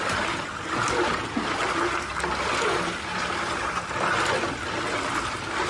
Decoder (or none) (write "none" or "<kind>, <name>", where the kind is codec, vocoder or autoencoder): none